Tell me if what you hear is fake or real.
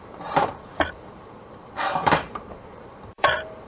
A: fake